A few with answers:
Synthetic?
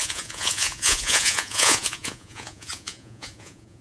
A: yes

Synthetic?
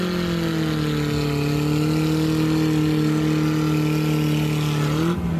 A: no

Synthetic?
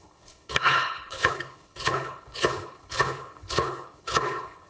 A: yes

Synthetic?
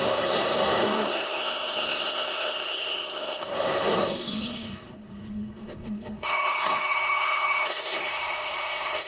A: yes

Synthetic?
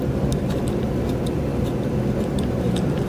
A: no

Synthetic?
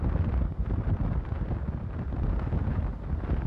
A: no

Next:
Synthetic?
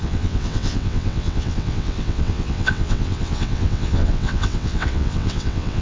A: yes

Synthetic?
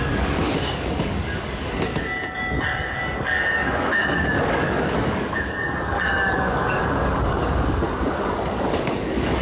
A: yes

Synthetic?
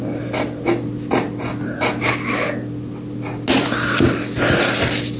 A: no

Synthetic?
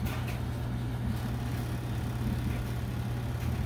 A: no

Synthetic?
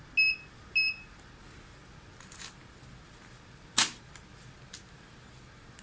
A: no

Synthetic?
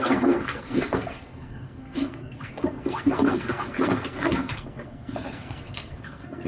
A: yes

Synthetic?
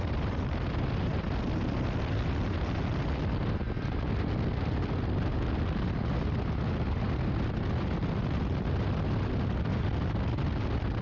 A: no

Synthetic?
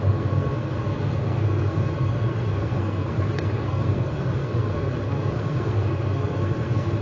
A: yes